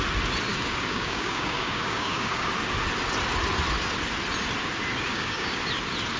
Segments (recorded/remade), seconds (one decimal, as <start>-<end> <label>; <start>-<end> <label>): 0.0-0.5 recorded; 0.5-2.5 remade; 2.5-5.1 recorded; 5.1-5.6 remade; 5.6-6.2 recorded

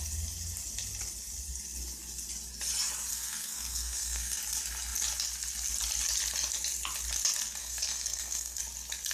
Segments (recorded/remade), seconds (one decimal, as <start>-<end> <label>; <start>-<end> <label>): 0.0-3.1 recorded; 3.1-4.4 remade; 4.4-7.6 recorded; 7.6-8.6 remade; 8.6-9.1 recorded